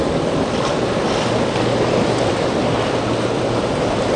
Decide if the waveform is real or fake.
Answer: real